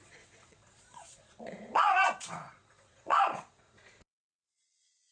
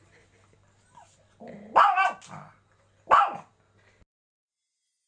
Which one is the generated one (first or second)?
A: first